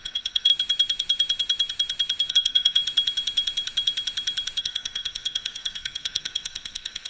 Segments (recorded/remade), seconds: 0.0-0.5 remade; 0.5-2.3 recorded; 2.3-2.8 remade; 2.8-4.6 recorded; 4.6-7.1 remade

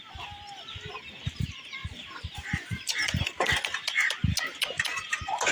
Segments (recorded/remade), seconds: 0.0-1.8 recorded; 1.8-3.5 remade; 3.5-5.5 recorded

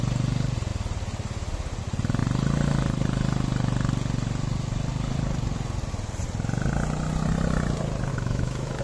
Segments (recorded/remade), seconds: 0.0-8.1 recorded; 8.1-8.8 remade

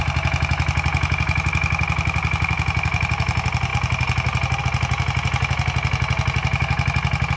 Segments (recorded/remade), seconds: 0.0-7.4 recorded

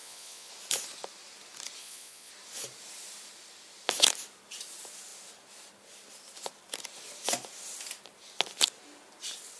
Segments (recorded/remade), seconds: 0.0-0.5 remade; 0.5-1.8 recorded; 1.8-2.3 remade; 2.3-9.6 recorded